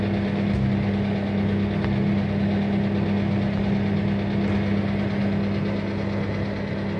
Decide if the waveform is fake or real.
real